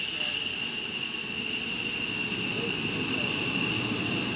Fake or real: real